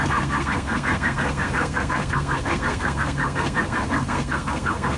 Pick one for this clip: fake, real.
fake